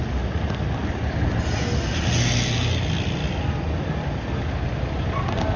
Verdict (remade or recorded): recorded